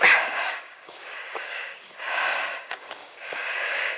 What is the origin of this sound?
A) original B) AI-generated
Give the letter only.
B